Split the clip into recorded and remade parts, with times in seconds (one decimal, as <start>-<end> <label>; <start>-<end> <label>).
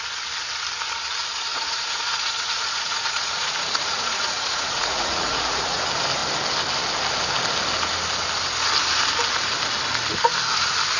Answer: 0.0-1.5 recorded; 1.5-5.8 remade; 5.8-11.0 recorded